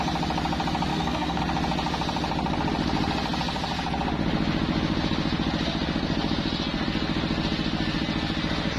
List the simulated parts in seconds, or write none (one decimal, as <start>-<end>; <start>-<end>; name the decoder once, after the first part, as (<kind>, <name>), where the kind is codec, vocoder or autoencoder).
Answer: 0.9-1.4 (codec, SNAC)